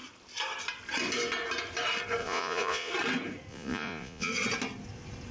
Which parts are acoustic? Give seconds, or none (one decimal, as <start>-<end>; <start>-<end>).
0.0-2.2; 2.9-3.5; 4.3-5.3

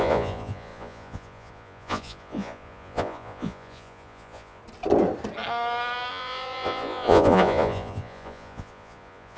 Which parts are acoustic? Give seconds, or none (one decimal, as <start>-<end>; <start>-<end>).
4.6-6.1

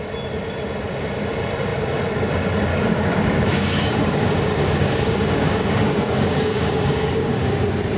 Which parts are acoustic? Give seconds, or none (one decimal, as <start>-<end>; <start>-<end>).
0.0-2.7; 7.5-8.0